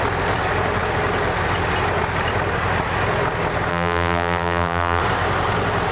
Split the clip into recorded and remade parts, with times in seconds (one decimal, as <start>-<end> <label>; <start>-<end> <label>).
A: 0.0-3.7 recorded; 3.7-5.0 remade; 5.0-5.9 recorded